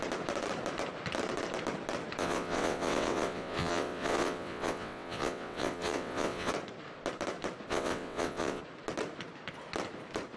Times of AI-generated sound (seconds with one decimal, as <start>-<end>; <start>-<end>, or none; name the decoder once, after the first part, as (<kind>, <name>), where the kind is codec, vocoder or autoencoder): 2.2-6.5 (vocoder, WaveNeXt); 7.7-8.6